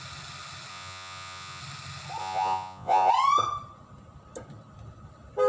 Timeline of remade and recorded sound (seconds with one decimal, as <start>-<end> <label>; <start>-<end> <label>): 0.0-0.7 recorded; 0.7-1.6 remade; 1.6-2.2 recorded; 2.2-3.1 remade; 3.1-5.5 recorded